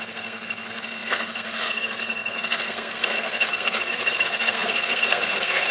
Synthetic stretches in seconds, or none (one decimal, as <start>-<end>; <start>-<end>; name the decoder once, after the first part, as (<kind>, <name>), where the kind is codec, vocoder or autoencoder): 0.0-5.7 (codec, SNAC)